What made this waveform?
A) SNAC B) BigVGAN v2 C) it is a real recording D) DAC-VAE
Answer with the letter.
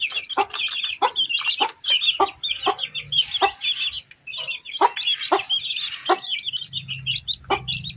C